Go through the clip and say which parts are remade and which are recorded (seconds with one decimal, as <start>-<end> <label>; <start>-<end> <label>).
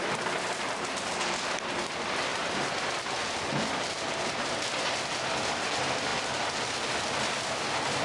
0.0-8.0 recorded